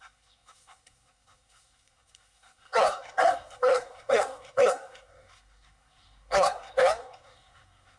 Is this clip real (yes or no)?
no